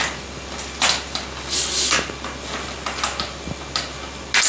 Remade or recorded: recorded